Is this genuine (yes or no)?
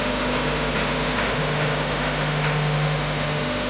no